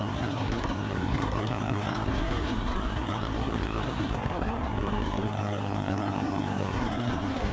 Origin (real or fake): fake